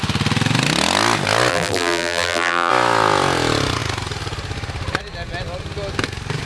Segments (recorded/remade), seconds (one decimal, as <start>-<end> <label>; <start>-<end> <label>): 0.0-1.5 recorded; 1.5-2.7 remade; 2.7-6.4 recorded